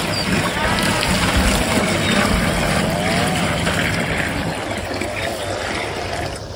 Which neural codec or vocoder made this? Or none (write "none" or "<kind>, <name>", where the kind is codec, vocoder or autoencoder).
none